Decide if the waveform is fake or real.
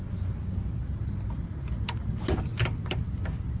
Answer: real